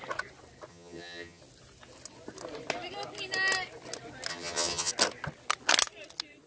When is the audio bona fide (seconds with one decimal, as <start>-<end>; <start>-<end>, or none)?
0.0-0.7; 1.4-4.3; 4.9-6.5